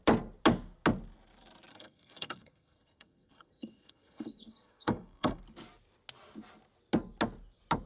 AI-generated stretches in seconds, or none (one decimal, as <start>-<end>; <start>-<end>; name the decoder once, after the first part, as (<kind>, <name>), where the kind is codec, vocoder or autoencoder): 1.7-5.4 (codec, SNAC)